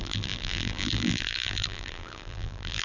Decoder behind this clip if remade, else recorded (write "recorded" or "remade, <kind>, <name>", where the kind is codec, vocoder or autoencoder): remade, vocoder, BigVGAN v2